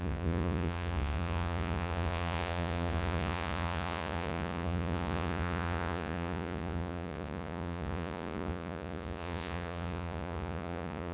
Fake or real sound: fake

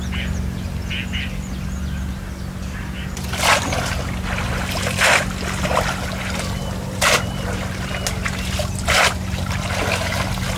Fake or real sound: real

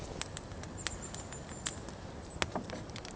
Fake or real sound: real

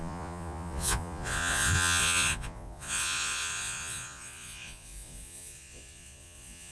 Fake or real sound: fake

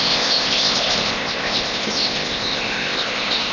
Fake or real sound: fake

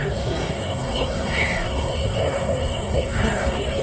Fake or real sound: fake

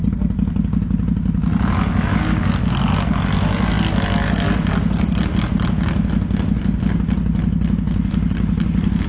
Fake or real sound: real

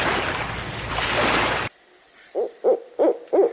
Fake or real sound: real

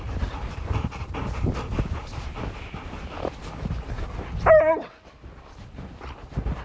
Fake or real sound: real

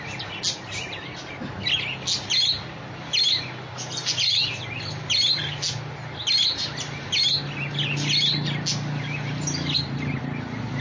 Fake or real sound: real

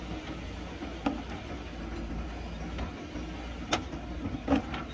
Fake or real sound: real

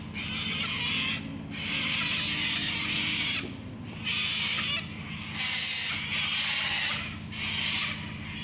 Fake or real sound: real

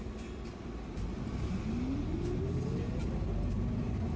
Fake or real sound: real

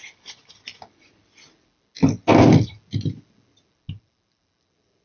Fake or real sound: real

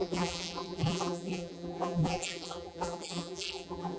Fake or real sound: fake